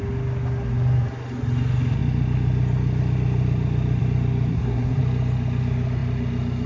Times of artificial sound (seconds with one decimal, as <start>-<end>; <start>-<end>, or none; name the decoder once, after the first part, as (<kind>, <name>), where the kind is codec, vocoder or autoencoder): 4.5-5.0 (codec, SNAC)